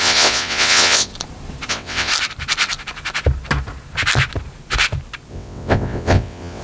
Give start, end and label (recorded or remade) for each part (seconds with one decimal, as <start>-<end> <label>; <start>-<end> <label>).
0.0-1.1 remade; 1.1-1.7 recorded; 1.7-2.1 remade; 2.1-5.3 recorded; 5.3-6.6 remade